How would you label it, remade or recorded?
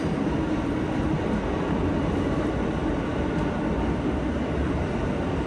recorded